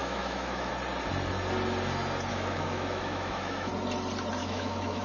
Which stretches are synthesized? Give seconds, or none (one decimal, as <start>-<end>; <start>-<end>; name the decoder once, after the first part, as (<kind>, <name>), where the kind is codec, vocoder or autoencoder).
0.0-0.7 (autoencoder, DAC-VAE); 2.3-3.7; 4.4-5.0